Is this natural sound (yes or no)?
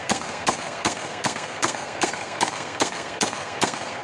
no